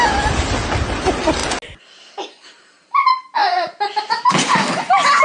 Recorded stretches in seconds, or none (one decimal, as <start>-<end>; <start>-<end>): 0.0-5.2